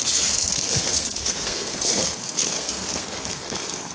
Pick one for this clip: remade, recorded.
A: remade